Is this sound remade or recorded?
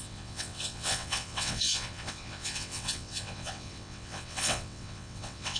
remade